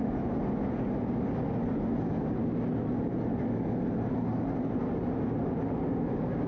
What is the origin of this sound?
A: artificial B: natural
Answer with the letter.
B